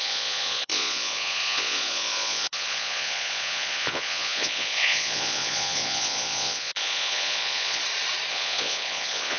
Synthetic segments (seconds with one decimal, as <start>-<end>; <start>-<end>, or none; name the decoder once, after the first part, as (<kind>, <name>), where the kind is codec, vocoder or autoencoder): 0.0-7.8 (vocoder, Vocos); 8.3-9.4